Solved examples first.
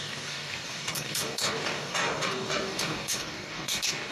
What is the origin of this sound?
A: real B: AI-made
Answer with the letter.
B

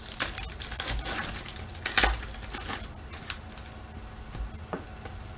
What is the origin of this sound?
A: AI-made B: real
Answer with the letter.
B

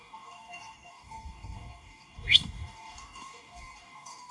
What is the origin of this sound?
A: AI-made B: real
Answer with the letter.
A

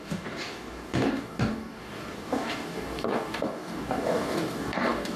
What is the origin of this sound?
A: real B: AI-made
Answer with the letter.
B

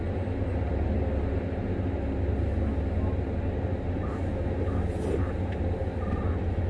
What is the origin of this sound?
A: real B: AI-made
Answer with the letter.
A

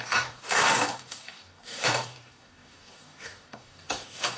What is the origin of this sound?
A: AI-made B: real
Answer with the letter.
A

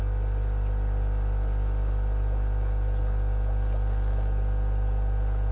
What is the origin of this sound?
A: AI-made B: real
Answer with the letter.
B